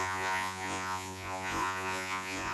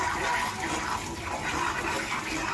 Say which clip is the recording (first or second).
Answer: second